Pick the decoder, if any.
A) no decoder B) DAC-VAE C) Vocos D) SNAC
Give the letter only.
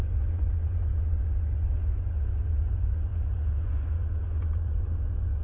C